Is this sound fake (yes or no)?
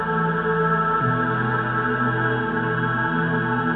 no